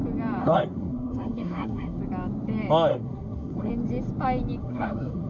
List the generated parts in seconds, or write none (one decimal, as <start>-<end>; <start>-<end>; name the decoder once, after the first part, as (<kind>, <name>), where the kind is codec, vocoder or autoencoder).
0.4-2.0 (codec, SNAC); 2.9-3.7; 4.6-5.3

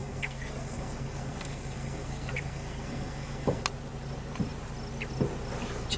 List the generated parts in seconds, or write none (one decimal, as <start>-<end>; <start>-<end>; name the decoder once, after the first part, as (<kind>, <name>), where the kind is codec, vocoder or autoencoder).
0.0-3.6 (codec, SNAC)

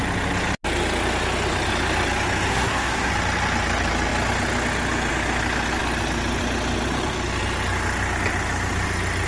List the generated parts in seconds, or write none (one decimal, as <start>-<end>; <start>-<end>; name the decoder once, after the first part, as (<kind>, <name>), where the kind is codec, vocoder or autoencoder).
2.5-3.1 (codec, SNAC)

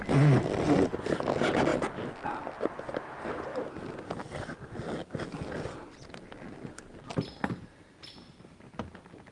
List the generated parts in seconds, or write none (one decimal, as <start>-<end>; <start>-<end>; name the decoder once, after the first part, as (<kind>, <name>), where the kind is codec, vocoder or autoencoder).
none

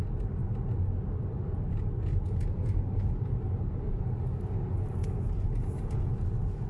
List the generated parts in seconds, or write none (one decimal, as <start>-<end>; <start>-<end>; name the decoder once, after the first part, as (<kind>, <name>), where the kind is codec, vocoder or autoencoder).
none

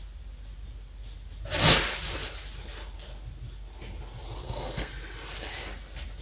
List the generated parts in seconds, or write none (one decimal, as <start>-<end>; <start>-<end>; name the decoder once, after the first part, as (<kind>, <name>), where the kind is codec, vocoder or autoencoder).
4.4-4.9 (codec, SNAC)